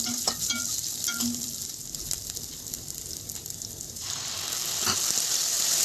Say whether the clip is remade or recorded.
recorded